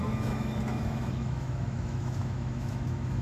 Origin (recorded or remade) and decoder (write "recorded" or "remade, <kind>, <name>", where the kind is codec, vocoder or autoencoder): remade, autoencoder, DAC-VAE